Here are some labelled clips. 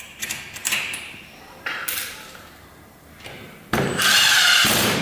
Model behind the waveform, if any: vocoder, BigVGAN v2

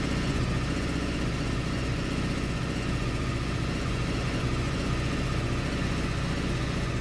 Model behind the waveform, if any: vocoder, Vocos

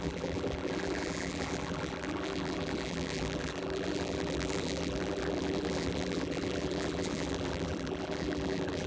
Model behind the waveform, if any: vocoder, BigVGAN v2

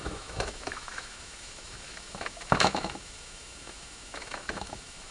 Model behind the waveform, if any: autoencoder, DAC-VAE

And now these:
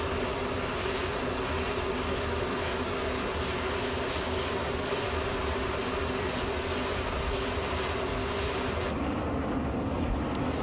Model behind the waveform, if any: none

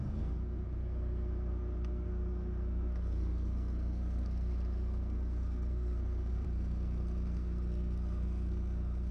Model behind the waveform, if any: codec, SNAC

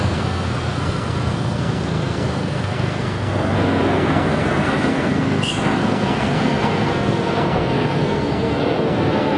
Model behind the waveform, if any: codec, SNAC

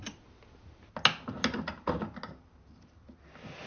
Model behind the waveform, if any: none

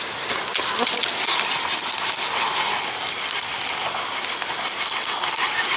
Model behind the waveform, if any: none